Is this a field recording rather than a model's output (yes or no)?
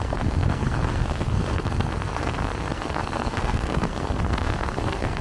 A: no